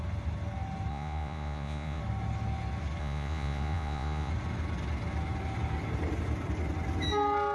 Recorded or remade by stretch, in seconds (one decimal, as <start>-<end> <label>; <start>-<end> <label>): 0.0-0.9 recorded; 0.9-2.0 remade; 2.0-3.0 recorded; 3.0-4.3 remade; 4.3-7.5 recorded